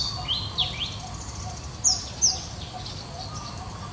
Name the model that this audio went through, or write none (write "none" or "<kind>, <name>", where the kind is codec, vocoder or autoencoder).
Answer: none